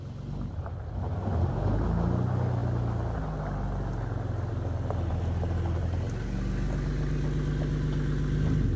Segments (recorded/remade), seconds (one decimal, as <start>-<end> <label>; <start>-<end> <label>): 0.0-8.8 recorded